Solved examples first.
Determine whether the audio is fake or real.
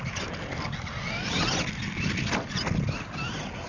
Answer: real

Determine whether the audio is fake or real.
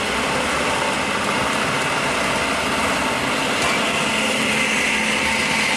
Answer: real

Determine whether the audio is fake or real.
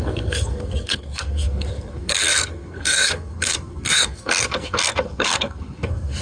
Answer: fake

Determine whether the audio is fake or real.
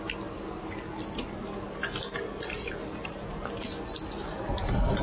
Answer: real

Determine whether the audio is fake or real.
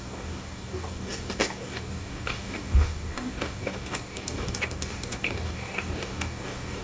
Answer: fake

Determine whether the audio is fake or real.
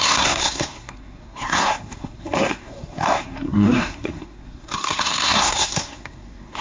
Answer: fake